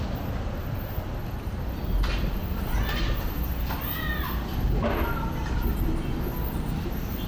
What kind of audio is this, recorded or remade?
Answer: recorded